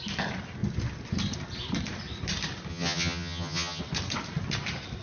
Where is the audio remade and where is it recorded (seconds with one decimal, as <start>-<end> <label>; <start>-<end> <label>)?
0.0-2.7 recorded; 2.7-3.8 remade; 3.8-5.0 recorded